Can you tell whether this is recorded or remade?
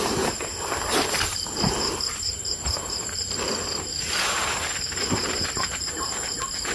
remade